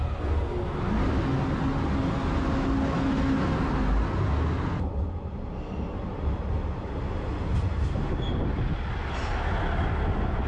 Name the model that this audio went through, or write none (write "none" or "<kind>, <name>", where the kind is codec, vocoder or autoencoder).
none